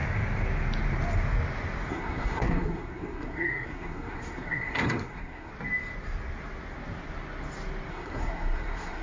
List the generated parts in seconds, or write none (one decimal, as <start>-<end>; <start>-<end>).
1.9-5.5; 7.9-9.0